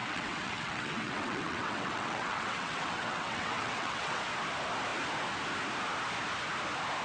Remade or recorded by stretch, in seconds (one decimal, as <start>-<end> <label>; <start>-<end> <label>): 0.0-4.2 remade; 4.2-7.0 recorded